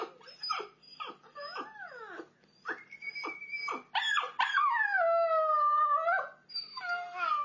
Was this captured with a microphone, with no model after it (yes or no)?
yes